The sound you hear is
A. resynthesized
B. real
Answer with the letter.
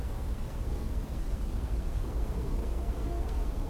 A